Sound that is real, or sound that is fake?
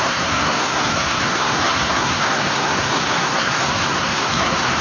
fake